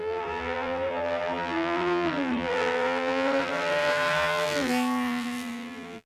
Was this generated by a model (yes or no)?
yes